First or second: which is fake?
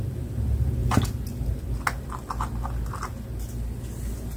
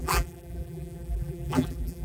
second